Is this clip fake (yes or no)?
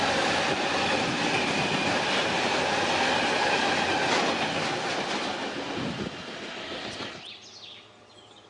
no